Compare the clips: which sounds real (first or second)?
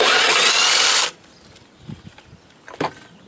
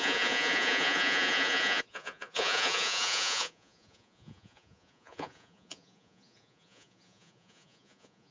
first